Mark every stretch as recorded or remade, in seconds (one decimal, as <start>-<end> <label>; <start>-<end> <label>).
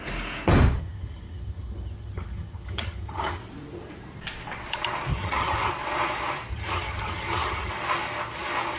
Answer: 0.0-0.8 recorded; 0.8-3.4 remade; 3.4-5.1 recorded; 5.1-5.7 remade; 5.7-6.5 recorded; 6.5-7.7 remade; 7.7-8.8 recorded